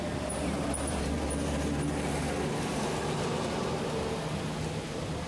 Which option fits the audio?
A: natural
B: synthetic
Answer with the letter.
A